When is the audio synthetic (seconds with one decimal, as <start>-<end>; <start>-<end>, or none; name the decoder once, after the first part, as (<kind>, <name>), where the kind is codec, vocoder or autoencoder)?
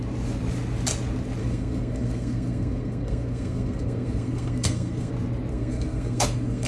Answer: 1.4-5.1 (codec, SNAC); 5.5-6.7